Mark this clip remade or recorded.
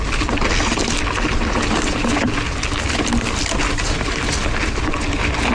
recorded